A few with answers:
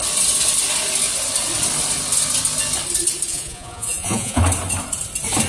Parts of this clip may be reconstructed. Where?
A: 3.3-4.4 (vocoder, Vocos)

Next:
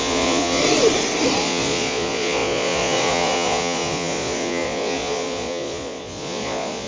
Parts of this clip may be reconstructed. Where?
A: 0.0-0.6 (vocoder, Vocos); 1.4-6.9